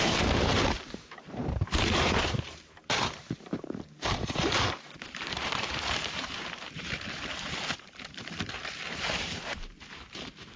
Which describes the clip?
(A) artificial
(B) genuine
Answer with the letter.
A